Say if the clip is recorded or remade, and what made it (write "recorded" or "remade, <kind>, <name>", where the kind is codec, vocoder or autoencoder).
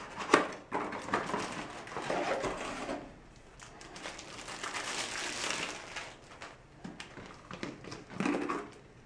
recorded